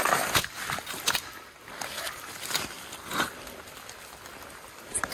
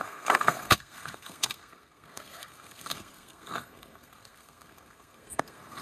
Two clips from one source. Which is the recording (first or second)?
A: first